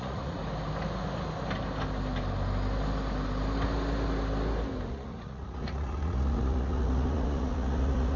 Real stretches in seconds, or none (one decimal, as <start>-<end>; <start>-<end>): 0.4-4.9